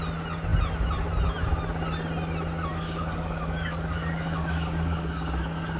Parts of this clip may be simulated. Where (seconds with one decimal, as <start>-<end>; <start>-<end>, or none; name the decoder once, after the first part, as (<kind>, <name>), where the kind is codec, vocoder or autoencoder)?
2.7-5.8 (codec, DAC)